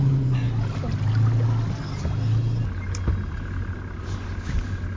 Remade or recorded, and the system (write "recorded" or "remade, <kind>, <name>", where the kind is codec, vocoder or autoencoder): recorded